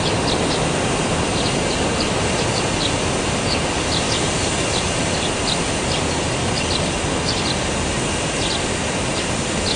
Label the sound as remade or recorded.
recorded